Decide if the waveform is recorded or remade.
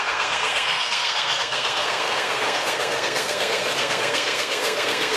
remade